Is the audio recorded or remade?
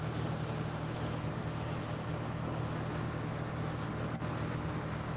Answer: recorded